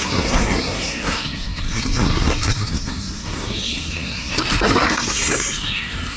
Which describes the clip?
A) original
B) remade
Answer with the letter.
B